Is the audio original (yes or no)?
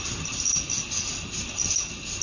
yes